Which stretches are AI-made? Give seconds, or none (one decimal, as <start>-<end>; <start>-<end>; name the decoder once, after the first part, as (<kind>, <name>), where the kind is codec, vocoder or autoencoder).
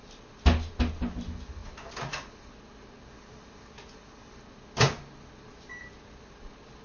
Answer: none